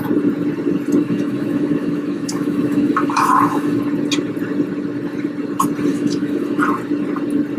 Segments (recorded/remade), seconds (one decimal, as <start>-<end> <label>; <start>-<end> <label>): 0.0-1.0 recorded; 1.0-3.8 remade; 3.8-5.9 recorded; 5.9-6.6 remade; 6.6-7.6 recorded